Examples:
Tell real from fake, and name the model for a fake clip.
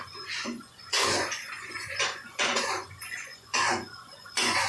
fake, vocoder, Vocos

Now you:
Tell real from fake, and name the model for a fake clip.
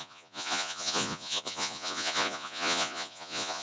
fake, vocoder, Vocos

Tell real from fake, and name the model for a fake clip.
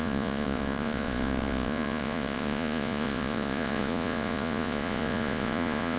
fake, vocoder, Vocos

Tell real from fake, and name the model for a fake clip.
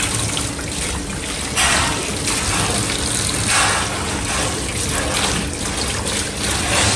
real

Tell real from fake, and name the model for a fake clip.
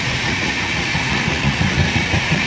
fake, vocoder, Vocos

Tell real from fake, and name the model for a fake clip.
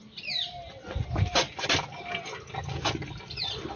real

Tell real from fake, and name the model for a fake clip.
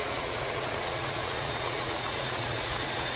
fake, vocoder, Vocos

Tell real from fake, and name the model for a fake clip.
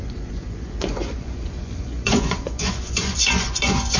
fake, vocoder, Vocos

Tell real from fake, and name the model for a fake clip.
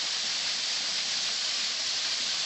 real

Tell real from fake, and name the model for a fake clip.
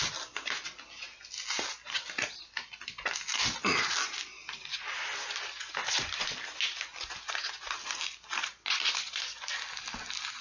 real